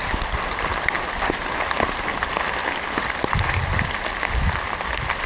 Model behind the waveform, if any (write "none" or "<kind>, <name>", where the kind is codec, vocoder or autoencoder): vocoder, BigVGAN v2